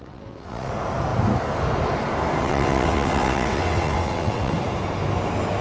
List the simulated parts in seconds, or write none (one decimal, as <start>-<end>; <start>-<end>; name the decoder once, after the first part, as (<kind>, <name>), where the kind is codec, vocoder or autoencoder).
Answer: 0.0-0.7 (vocoder, WaveNeXt); 2.4-4.5